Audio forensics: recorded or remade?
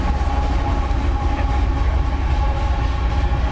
recorded